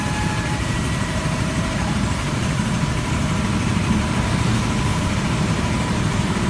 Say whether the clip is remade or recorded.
remade